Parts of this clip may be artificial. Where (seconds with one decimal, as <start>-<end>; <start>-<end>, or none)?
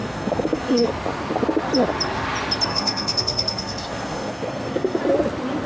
0.0-0.9; 2.7-5.0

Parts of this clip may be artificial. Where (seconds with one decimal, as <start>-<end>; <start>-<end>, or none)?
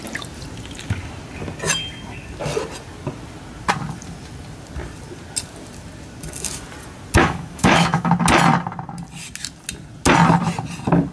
7.2-8.1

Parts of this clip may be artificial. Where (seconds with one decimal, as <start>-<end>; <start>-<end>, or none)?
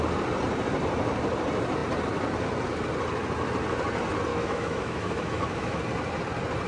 4.3-5.8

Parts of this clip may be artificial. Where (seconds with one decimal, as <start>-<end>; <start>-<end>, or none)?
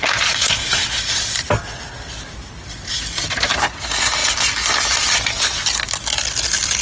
none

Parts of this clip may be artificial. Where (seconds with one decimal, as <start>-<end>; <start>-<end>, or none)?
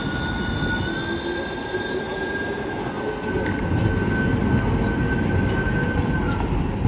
none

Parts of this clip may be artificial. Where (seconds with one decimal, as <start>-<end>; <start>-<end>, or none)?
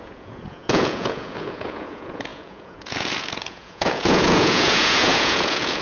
0.0-5.8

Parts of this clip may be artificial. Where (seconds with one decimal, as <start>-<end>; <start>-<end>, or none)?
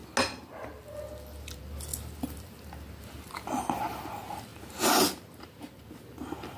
none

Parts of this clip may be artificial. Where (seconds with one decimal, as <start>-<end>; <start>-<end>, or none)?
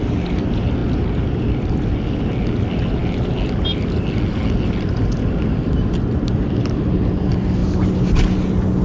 none